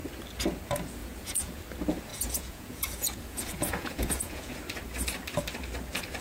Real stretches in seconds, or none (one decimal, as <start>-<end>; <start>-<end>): 0.0-1.0; 1.6-2.1; 4.5-6.2